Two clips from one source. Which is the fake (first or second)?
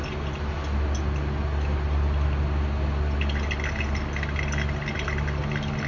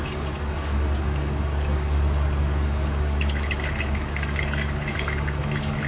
second